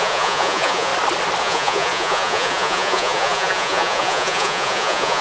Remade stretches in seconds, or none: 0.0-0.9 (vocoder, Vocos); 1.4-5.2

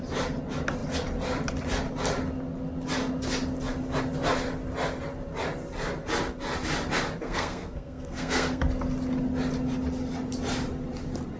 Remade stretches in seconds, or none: 7.2-8.6 (codec, SNAC)